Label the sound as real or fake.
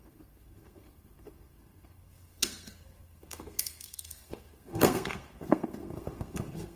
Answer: fake